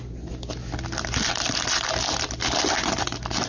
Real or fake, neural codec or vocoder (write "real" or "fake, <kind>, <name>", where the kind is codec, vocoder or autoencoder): real